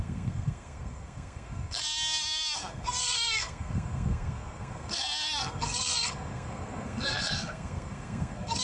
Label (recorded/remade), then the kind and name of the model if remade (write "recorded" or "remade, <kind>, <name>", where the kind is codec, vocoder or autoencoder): remade, codec, SNAC